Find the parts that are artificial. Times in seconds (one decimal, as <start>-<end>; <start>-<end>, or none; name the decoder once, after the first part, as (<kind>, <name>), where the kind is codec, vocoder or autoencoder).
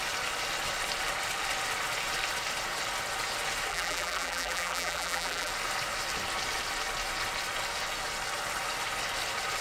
3.7-5.5 (vocoder, BigVGAN v2)